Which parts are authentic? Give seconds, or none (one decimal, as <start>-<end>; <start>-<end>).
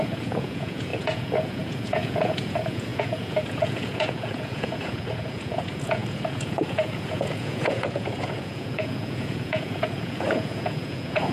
none